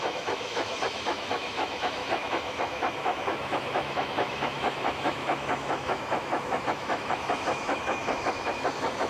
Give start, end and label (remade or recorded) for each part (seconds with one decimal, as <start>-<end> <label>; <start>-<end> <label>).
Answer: 0.0-9.1 remade